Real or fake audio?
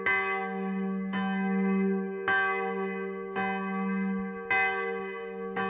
real